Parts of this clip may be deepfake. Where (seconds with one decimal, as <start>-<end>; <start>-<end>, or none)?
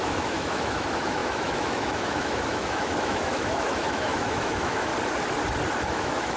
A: 0.0-4.9; 5.9-6.4